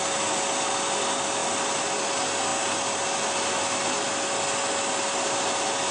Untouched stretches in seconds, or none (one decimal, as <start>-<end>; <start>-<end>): 0.0-5.9